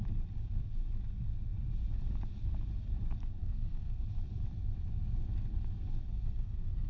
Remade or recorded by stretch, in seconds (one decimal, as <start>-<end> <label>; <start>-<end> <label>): 0.0-3.4 recorded; 3.4-4.0 remade; 4.0-6.1 recorded; 6.1-6.9 remade